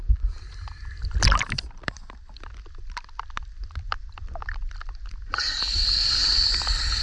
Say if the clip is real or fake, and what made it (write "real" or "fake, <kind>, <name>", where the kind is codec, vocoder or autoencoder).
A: fake, vocoder, BigVGAN v2